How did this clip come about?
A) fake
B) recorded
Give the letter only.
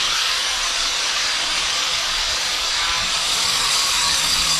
A